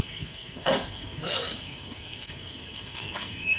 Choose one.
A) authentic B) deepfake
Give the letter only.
B